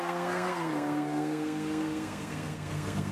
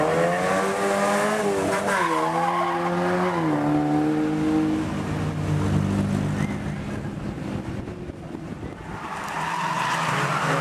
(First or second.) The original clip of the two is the second